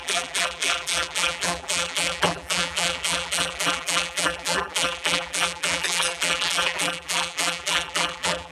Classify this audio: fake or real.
fake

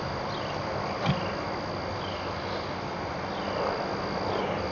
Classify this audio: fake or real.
real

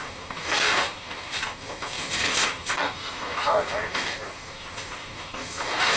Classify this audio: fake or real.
fake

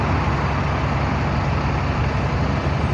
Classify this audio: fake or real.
real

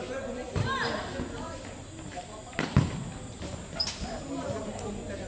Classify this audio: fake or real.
real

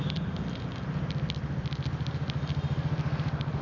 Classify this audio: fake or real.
real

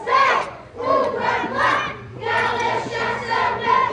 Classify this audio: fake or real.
fake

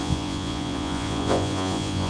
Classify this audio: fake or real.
fake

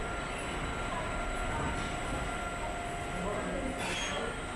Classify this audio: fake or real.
real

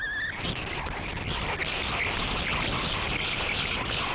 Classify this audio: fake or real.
real